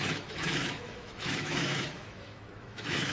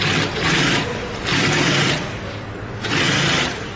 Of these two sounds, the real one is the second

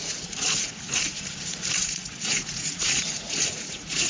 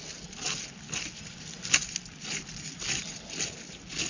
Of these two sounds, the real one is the second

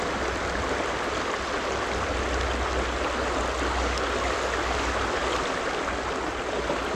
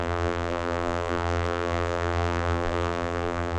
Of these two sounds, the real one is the first